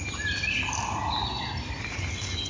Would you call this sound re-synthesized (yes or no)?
no